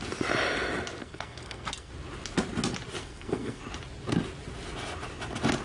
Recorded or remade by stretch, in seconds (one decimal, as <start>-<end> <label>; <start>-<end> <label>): 0.0-1.0 recorded; 1.0-1.9 remade; 1.9-3.0 recorded; 3.0-3.6 remade; 3.6-5.6 recorded